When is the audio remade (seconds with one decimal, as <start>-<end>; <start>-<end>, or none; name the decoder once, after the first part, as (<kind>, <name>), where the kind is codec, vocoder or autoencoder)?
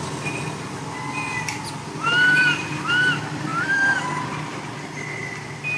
none